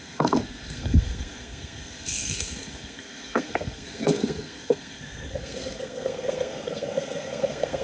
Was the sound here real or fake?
fake